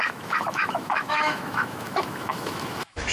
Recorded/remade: remade